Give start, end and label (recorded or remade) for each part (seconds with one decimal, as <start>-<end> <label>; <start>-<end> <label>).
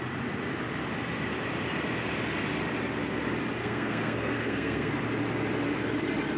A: 0.0-3.6 recorded; 3.6-4.9 remade; 4.9-6.4 recorded